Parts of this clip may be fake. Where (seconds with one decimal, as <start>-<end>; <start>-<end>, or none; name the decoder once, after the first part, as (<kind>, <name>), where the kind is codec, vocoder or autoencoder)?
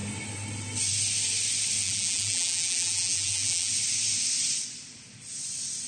1.8-3.7 (vocoder, BigVGAN v2)